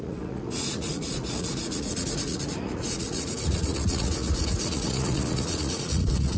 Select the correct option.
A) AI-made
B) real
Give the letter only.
A